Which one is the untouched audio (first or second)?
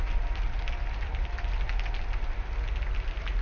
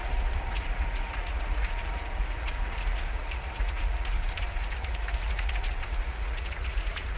first